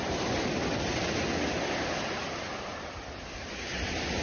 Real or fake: real